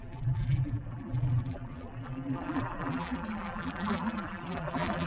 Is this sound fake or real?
fake